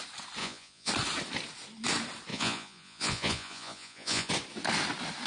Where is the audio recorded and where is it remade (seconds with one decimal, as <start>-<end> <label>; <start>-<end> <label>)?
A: 0.0-0.4 recorded; 0.4-0.9 remade; 0.9-2.3 recorded; 2.3-4.3 remade; 4.3-5.3 recorded